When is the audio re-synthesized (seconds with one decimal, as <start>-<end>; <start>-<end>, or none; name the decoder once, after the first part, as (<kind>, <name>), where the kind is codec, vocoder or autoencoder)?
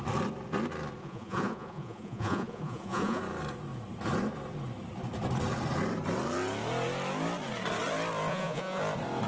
1.0-3.2 (vocoder, Vocos); 8.3-8.8